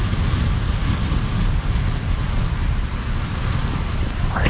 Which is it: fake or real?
real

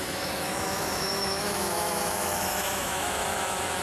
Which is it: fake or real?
fake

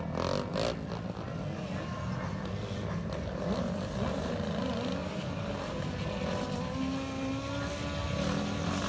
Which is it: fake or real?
real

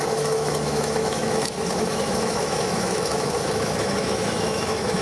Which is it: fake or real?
fake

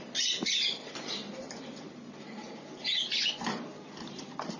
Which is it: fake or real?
real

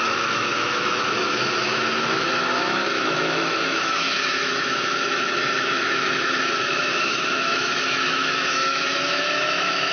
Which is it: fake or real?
fake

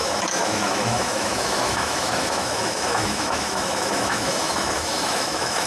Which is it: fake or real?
fake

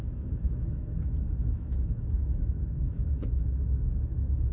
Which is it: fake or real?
fake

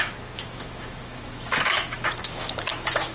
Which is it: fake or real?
fake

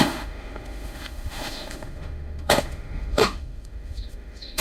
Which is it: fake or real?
fake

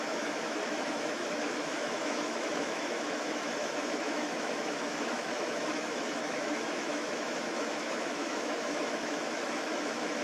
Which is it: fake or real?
fake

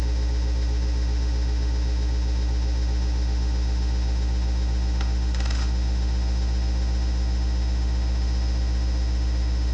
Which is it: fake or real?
fake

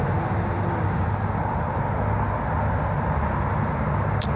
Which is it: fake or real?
real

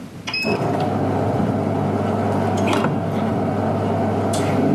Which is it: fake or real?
real